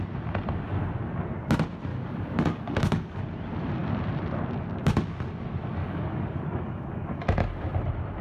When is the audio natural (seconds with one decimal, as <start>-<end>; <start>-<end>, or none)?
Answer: 0.0-1.9; 3.2-5.8; 7.2-8.2